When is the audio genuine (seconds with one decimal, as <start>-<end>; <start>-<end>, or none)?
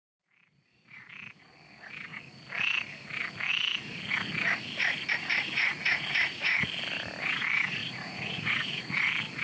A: 0.0-5.4; 6.5-7.8; 8.8-9.4